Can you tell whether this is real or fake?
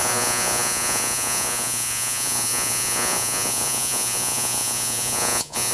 fake